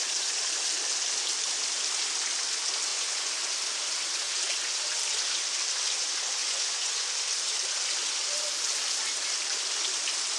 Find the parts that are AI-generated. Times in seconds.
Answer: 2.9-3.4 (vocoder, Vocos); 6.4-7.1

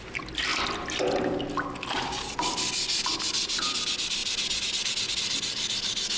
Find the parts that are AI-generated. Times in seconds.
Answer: none

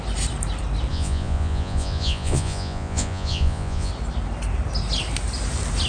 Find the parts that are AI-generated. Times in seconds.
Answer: 0.9-3.9 (vocoder, Vocos)

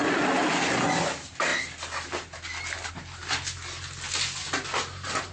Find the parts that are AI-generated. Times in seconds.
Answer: none

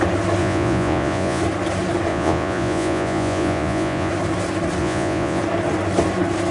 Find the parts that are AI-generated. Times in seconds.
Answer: 0.4-1.4 (vocoder, Vocos); 2.1-4.1; 4.8-5.4

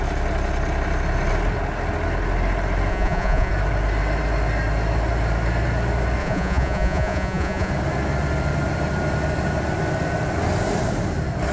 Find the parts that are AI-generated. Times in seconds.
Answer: 2.9-3.5 (vocoder, Vocos); 6.2-7.7

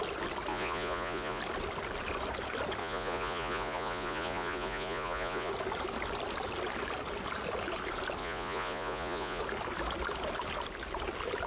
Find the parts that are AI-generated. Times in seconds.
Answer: 0.5-1.4 (vocoder, Vocos); 2.8-5.5; 8.2-9.4

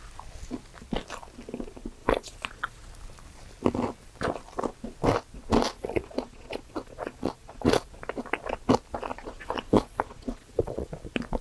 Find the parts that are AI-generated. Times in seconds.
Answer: 2.0-2.9 (vocoder, Vocos); 5.7-7.9; 9.1-10.9